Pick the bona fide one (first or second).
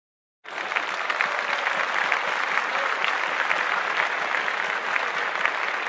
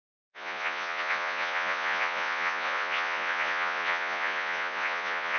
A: first